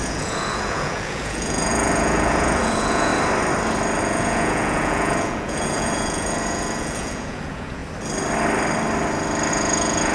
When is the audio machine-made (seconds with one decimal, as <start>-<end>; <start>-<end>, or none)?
0.0-3.1; 4.0-7.8; 9.5-10.1

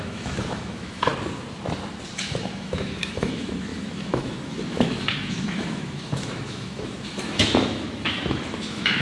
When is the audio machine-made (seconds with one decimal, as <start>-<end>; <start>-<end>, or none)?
0.0-1.1; 2.2-9.0

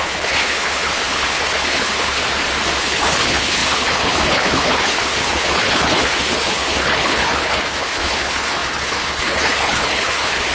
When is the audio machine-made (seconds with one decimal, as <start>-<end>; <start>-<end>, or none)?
0.0-2.2; 2.8-10.5

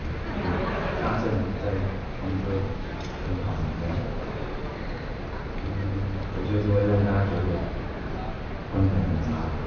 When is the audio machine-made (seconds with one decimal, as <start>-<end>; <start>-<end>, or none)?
none

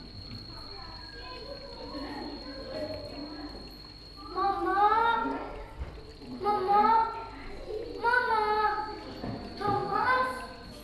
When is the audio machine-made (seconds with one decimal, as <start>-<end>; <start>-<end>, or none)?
6.1-8.3

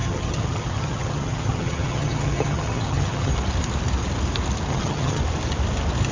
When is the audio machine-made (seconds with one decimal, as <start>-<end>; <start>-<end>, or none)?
0.0-3.3; 4.7-5.2